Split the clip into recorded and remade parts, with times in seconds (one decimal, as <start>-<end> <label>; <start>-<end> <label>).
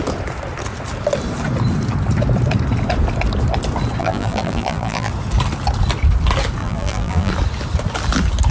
0.0-4.0 recorded; 4.0-5.1 remade; 5.1-6.6 recorded; 6.6-7.3 remade; 7.3-8.5 recorded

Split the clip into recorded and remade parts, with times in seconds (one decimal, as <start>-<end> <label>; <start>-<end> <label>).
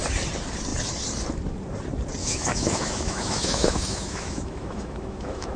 0.0-2.2 recorded; 2.2-5.6 remade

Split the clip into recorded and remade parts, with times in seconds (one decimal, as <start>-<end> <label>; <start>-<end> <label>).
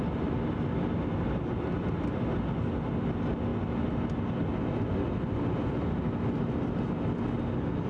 0.0-7.9 recorded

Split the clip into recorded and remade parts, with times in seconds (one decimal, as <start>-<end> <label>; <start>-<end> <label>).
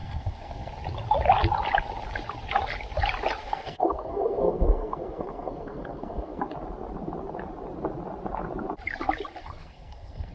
0.0-0.7 remade; 0.7-3.4 recorded; 3.4-6.4 remade; 6.4-9.4 recorded; 9.4-10.3 remade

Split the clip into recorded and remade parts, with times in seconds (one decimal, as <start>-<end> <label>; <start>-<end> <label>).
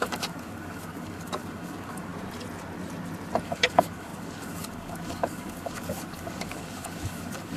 0.0-2.1 remade; 2.1-3.4 recorded; 3.4-7.6 remade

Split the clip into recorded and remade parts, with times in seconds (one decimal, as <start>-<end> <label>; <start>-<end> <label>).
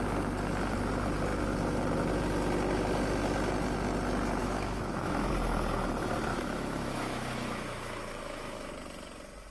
0.0-4.4 recorded; 4.4-5.3 remade; 5.3-6.3 recorded; 6.3-8.7 remade; 8.7-9.5 recorded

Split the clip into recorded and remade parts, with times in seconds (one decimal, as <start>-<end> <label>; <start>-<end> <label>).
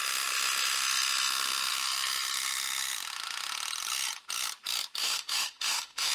0.0-5.0 recorded; 5.0-6.1 remade